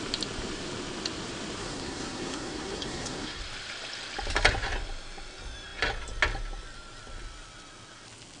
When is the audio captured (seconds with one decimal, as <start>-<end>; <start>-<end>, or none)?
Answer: 0.0-1.6; 3.4-8.4